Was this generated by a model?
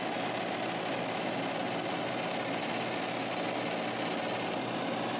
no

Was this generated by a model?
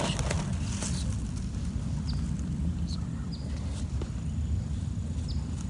no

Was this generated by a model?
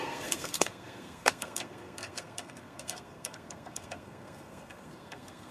yes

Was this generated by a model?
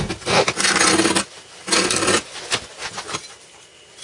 no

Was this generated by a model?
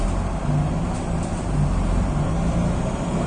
no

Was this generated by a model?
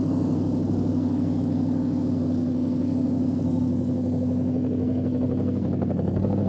yes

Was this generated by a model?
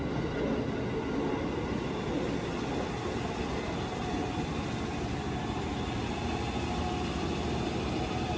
no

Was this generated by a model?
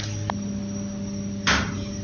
no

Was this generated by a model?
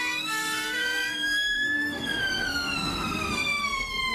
yes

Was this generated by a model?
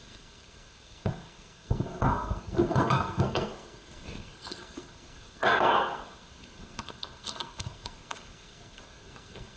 yes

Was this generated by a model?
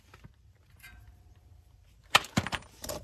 yes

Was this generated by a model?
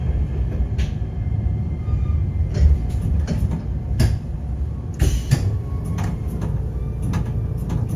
no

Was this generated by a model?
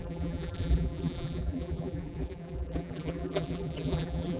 yes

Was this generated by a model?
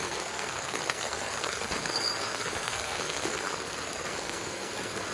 yes